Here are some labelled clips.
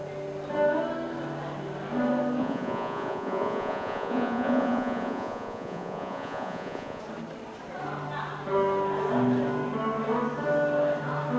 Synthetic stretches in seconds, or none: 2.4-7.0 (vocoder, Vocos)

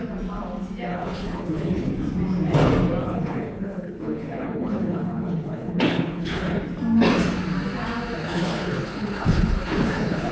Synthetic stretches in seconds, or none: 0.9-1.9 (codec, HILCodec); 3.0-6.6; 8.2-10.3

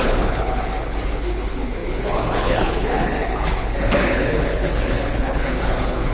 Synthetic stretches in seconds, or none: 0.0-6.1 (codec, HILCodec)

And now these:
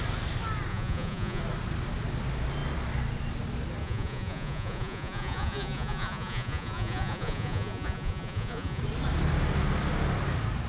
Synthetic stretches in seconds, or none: 0.7-1.4 (vocoder, Vocos); 3.8-8.8